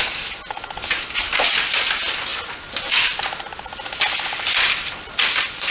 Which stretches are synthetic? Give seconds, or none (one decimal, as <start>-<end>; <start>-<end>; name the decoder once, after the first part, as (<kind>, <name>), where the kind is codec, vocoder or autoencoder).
none

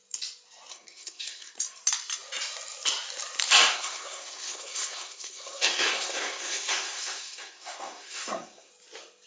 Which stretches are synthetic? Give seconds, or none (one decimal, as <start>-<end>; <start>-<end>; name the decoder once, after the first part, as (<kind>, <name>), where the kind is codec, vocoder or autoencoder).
0.7-1.5 (codec, SNAC); 3.7-8.7

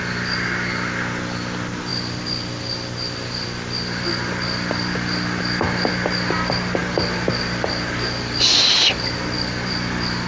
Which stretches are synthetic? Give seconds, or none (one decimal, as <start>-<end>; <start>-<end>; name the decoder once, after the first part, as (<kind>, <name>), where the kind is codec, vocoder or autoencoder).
none